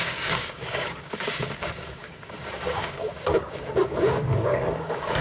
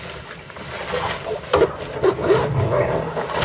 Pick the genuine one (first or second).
second